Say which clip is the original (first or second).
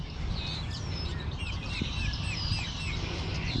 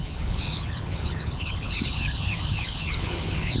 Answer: first